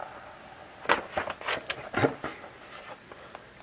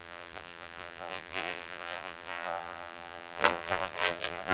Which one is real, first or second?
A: first